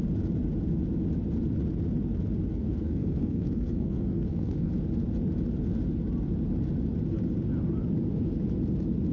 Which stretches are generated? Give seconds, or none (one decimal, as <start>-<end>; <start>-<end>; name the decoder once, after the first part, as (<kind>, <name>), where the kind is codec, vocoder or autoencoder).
2.5-4.7 (codec, SNAC)